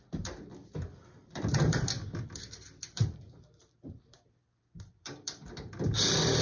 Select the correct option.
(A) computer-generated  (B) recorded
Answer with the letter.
A